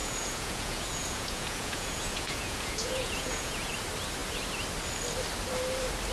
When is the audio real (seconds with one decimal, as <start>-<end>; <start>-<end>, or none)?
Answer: 3.7-6.1